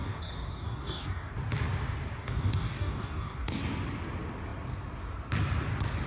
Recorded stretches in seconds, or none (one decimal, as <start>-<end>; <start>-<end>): 1.3-2.2; 3.6-6.1